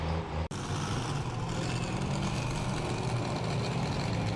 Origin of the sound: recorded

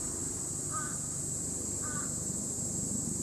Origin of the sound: remade